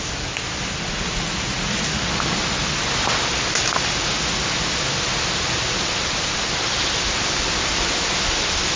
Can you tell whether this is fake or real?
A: real